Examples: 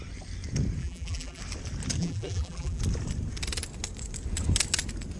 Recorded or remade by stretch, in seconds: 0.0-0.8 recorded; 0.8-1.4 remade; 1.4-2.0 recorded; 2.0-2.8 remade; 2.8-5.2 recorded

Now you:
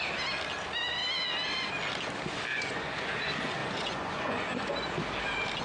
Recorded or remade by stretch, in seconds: 0.0-2.5 recorded; 2.5-3.1 remade; 3.1-3.6 recorded; 3.6-4.7 remade; 4.7-5.6 recorded

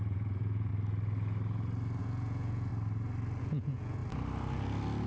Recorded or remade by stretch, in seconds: 0.0-0.7 remade; 0.7-2.0 recorded; 2.0-2.7 remade; 2.7-3.4 recorded; 3.4-4.0 remade; 4.0-5.1 recorded

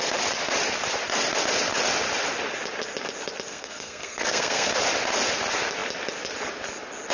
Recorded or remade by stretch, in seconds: 0.0-3.5 recorded; 3.5-4.7 remade; 4.7-7.1 recorded

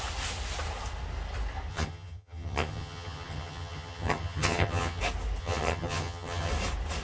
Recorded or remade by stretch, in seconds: 0.0-1.7 recorded; 1.7-5.0 remade; 5.0-5.4 recorded; 5.4-6.5 remade; 6.5-7.0 recorded

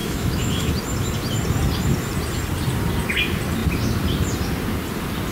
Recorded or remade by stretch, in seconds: 0.0-0.7 remade; 0.7-5.3 recorded